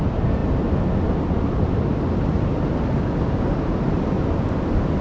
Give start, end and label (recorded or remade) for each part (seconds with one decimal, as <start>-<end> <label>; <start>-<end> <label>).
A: 0.0-5.0 recorded